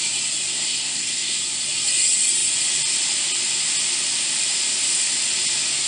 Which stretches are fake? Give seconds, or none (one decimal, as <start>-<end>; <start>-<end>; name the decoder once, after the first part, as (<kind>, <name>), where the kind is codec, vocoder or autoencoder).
0.5-1.4 (codec, SNAC)